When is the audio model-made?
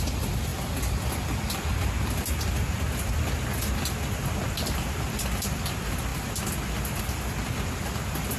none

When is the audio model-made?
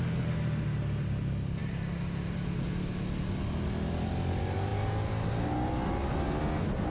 none